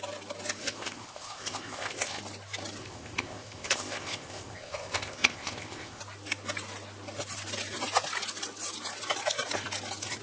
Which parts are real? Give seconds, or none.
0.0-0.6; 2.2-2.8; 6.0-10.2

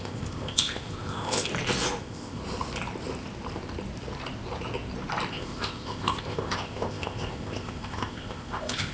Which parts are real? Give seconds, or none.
1.5-2.0; 2.4-5.3

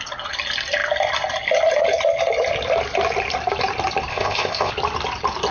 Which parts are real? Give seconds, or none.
0.0-4.1; 4.7-5.5